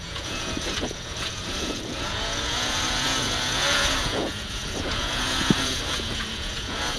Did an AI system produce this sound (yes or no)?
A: yes